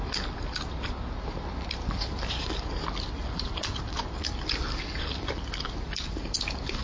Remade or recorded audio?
recorded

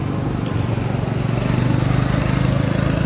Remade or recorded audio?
recorded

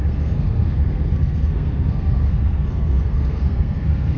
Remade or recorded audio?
remade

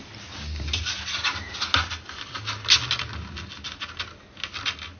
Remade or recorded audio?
recorded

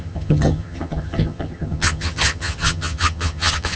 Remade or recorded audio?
remade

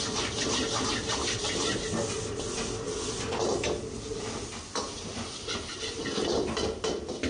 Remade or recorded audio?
recorded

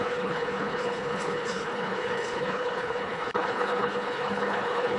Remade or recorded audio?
remade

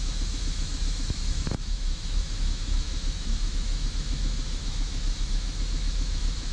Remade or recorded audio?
remade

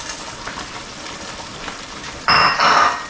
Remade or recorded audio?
recorded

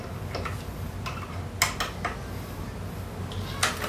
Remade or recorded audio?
recorded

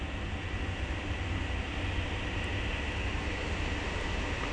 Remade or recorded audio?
recorded